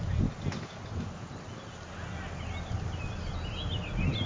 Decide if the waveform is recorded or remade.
recorded